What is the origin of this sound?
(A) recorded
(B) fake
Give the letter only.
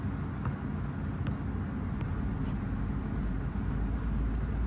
A